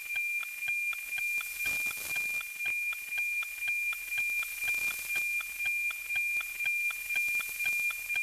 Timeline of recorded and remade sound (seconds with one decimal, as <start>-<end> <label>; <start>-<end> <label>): 0.0-8.2 recorded